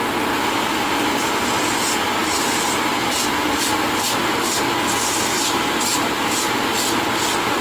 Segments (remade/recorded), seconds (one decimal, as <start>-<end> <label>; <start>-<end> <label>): 0.0-2.2 recorded; 2.2-3.1 remade; 3.1-5.3 recorded; 5.3-5.8 remade; 5.8-7.6 recorded